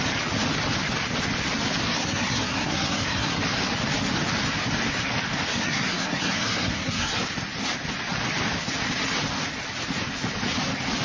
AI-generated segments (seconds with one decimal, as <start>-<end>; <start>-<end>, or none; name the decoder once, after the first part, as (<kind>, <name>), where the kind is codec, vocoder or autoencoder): 1.9-3.4 (codec, SNAC); 5.5-7.2